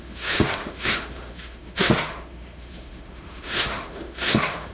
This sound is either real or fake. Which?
fake